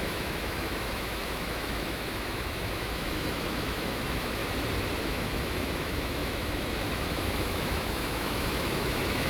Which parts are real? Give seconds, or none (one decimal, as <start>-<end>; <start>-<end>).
4.4-5.0